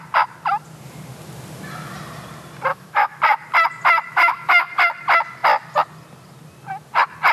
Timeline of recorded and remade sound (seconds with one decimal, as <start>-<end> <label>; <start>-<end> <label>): 0.0-2.7 recorded; 2.7-3.2 remade; 3.2-4.1 recorded; 4.1-4.7 remade; 4.7-7.3 recorded

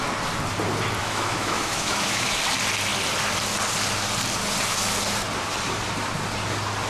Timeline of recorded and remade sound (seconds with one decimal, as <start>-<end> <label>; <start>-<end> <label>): 0.0-1.0 recorded; 1.0-2.4 remade; 2.4-6.9 recorded

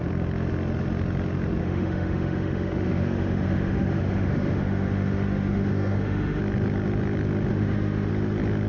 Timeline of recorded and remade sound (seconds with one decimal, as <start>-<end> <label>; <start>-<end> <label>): 0.0-1.6 recorded; 1.6-6.4 remade; 6.4-7.5 recorded; 7.5-8.1 remade; 8.1-8.7 recorded